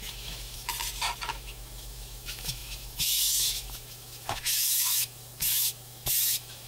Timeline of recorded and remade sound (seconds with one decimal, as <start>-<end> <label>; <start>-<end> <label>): 0.0-0.7 remade; 0.7-1.3 recorded; 1.3-6.7 remade